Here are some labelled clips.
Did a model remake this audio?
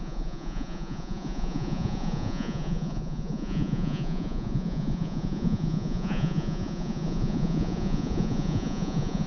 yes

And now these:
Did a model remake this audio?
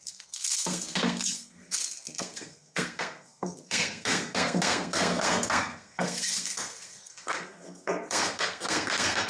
yes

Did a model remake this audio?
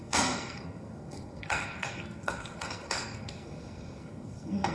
yes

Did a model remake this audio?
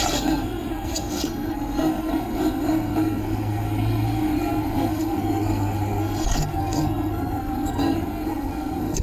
yes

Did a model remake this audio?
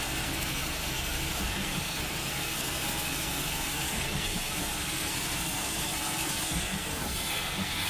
yes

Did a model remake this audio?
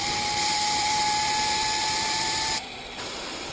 yes